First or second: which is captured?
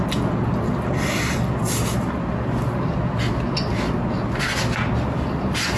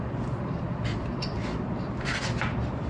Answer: first